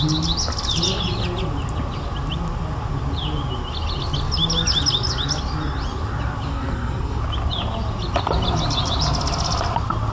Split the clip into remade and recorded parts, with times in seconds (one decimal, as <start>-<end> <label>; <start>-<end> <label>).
0.0-6.5 recorded; 6.5-7.2 remade; 7.2-10.1 recorded